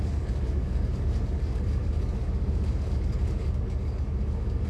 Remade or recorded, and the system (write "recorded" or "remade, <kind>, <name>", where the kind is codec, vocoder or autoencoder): remade, codec, DAC